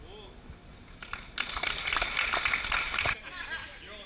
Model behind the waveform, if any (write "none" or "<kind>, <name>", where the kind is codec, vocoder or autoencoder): none